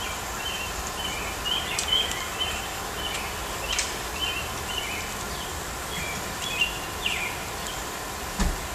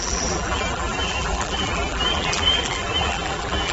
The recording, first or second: first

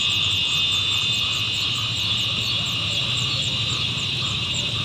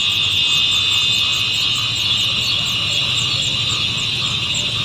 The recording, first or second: second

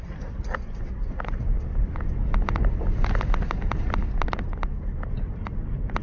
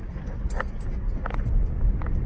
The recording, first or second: second